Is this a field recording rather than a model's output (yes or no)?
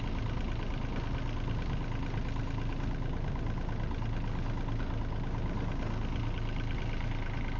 yes